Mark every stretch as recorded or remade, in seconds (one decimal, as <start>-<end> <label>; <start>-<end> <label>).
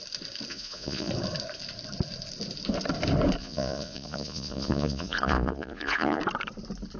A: 0.0-0.5 recorded; 0.5-1.1 remade; 1.1-3.4 recorded; 3.4-6.2 remade; 6.2-7.0 recorded